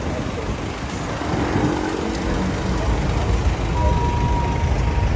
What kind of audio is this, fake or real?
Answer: real